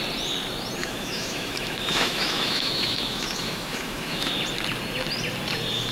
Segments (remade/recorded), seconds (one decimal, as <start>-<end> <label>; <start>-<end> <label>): 0.0-0.8 recorded; 0.8-4.3 remade; 4.3-5.9 recorded